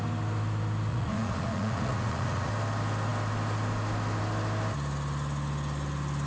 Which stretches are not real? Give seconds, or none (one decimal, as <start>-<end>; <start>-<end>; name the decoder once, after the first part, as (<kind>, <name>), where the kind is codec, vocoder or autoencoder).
0.9-2.5 (vocoder, Vocos)